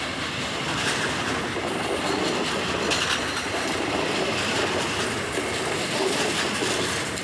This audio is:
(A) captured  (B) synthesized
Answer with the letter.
B